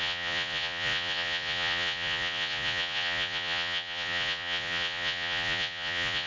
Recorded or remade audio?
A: remade